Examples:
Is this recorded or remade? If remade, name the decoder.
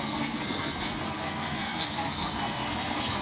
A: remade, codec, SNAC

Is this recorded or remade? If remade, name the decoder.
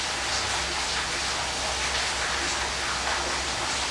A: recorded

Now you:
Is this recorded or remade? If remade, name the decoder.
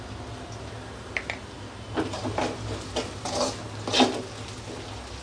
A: recorded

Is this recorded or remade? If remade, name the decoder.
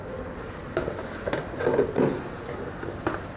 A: recorded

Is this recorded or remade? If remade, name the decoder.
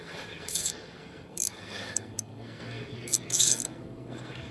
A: remade, codec, SNAC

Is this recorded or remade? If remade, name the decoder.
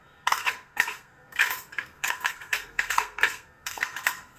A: remade, codec, SNAC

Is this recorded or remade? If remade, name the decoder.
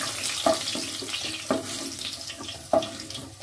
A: recorded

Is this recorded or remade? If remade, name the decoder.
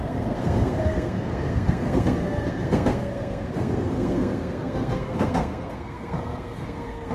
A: remade, codec, SNAC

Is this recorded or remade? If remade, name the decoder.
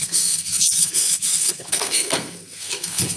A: remade, codec, SNAC